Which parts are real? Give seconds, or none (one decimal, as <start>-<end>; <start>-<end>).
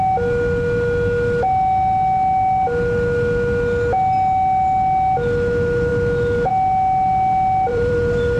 0.0-7.7